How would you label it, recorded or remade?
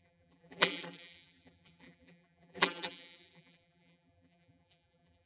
remade